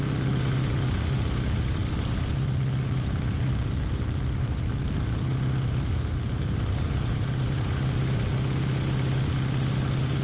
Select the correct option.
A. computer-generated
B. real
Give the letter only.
B